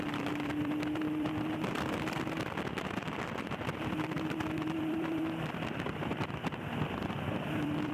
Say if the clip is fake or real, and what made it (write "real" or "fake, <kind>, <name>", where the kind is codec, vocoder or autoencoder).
fake, vocoder, BigVGAN v2